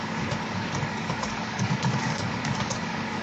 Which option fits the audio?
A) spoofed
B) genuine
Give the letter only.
A